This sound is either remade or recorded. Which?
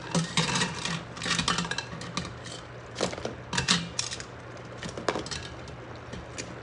recorded